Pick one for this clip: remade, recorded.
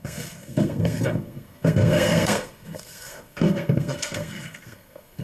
remade